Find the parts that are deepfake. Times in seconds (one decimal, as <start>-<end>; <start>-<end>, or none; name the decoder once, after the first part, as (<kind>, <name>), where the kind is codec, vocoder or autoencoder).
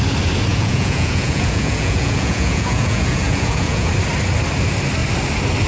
0.5-3.9 (vocoder, Vocos)